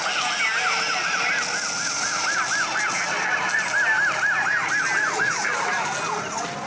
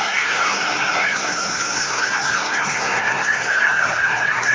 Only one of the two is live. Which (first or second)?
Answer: first